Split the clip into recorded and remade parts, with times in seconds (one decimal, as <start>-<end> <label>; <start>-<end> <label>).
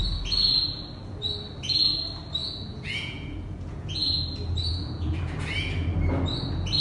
0.0-2.4 recorded; 2.4-4.2 remade; 4.2-4.7 recorded; 4.7-5.2 remade; 5.2-6.8 recorded